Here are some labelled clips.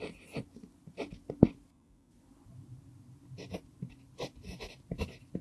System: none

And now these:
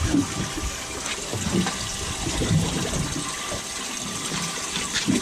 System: vocoder, BigVGAN v2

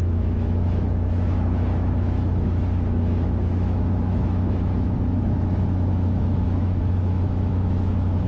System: autoencoder, DAC-VAE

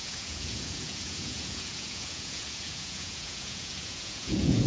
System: vocoder, Vocos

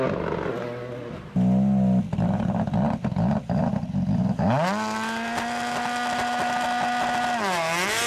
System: none